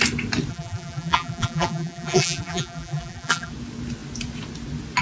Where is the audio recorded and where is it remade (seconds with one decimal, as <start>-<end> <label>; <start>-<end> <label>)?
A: 0.0-0.5 recorded; 0.5-3.5 remade; 3.5-5.0 recorded